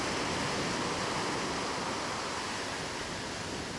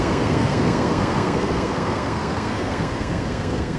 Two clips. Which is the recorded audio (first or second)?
first